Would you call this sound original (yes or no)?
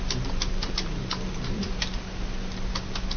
yes